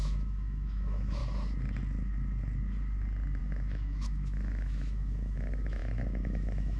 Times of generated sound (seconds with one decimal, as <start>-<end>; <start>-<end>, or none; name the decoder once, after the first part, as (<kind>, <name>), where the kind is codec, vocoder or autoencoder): 0.0-1.2 (autoencoder, DAC-VAE); 3.4-6.8